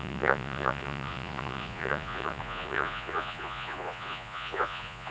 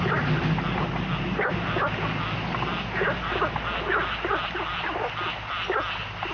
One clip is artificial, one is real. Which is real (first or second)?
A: second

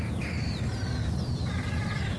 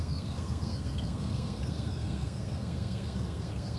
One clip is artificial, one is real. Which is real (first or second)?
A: first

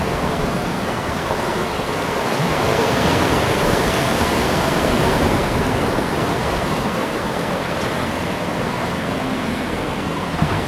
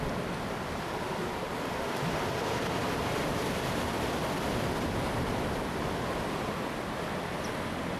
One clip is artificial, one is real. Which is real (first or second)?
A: second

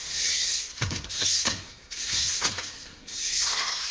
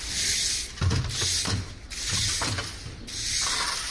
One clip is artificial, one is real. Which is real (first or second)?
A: second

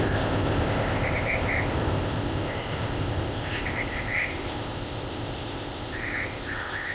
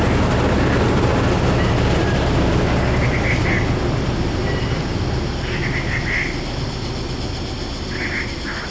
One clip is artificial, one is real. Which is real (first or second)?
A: second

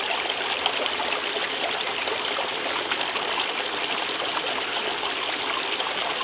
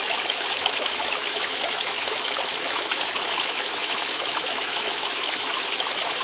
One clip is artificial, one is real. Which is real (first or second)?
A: first